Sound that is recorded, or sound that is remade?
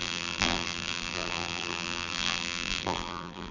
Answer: remade